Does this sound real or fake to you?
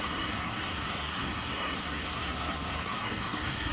fake